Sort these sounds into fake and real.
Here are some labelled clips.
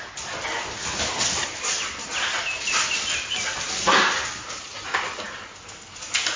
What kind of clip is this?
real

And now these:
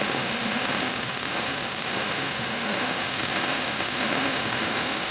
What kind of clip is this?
fake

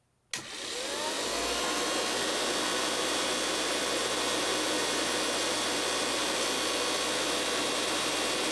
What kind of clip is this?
real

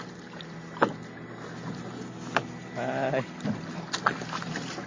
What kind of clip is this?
real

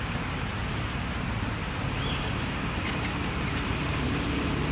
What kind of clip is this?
fake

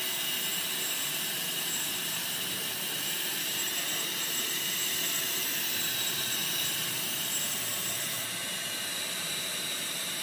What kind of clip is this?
fake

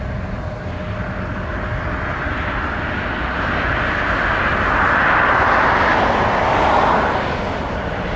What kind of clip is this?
real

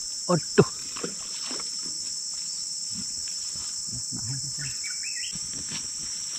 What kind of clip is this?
real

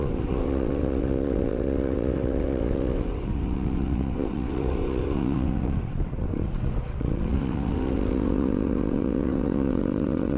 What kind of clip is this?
fake